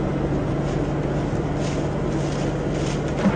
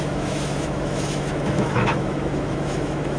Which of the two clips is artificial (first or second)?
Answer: second